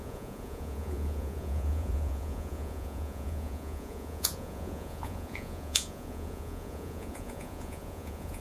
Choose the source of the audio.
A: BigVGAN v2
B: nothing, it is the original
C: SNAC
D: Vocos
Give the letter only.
D